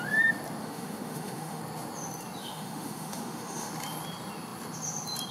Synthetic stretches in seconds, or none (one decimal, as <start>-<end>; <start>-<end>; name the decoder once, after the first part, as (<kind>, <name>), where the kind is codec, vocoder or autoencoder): 0.6-1.6 (autoencoder, DAC-VAE); 2.4-3.7